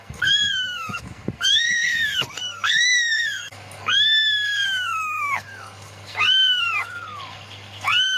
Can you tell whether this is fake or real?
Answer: fake